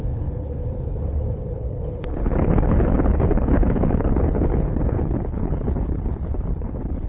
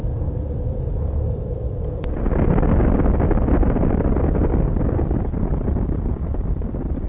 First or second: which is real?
second